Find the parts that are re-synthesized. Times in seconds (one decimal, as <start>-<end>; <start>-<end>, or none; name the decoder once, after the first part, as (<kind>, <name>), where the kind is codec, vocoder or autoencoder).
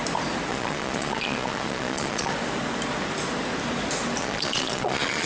0.5-2.3 (vocoder, Vocos); 4.2-5.3